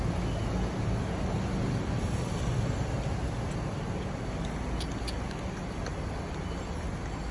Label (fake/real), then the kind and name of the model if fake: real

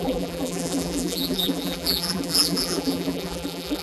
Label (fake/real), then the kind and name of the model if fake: fake, vocoder, BigVGAN v2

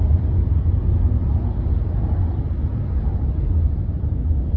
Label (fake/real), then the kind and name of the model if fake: real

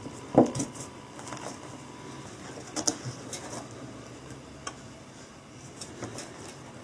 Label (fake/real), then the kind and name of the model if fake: real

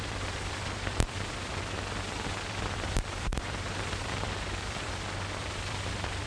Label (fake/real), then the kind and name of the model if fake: fake, vocoder, BigVGAN v2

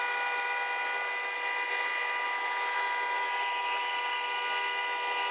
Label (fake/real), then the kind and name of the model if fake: real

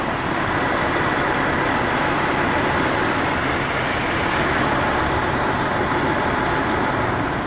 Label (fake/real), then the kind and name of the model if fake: fake, vocoder, BigVGAN v2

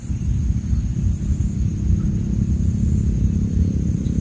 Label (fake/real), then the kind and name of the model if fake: real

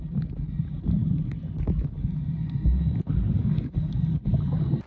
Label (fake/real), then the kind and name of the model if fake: real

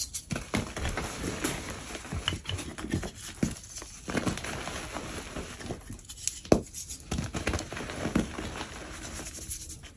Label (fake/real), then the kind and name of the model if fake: real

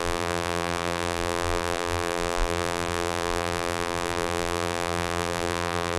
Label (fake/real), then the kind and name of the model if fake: fake, vocoder, BigVGAN v2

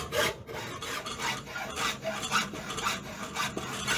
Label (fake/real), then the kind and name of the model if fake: fake, vocoder, BigVGAN v2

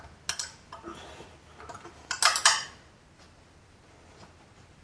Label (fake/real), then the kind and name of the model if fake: real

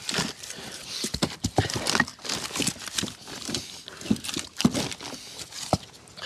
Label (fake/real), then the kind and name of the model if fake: real